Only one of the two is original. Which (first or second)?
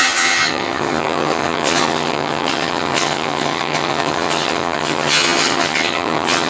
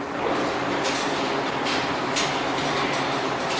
second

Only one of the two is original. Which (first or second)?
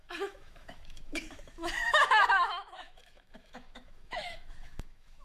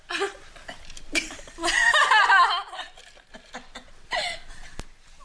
second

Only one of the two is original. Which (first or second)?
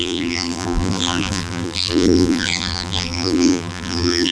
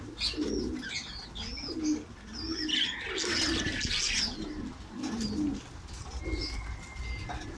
second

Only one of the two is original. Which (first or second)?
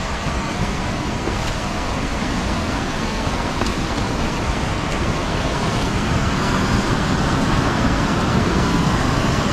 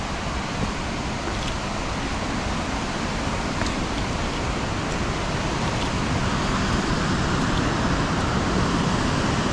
second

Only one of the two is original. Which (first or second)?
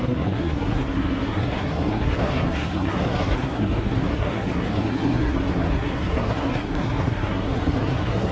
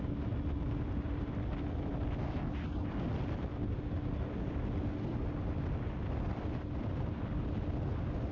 second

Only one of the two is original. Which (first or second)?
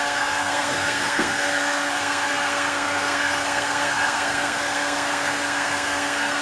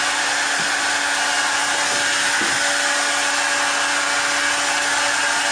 second